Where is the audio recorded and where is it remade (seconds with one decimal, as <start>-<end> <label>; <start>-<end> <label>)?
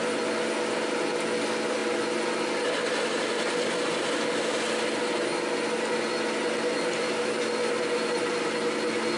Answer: 0.0-9.2 recorded